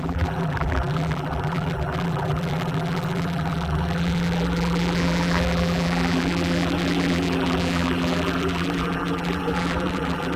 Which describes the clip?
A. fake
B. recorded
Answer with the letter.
A